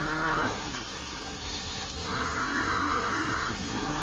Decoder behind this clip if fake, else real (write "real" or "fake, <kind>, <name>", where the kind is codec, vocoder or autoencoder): fake, codec, SNAC